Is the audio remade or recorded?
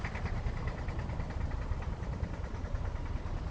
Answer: recorded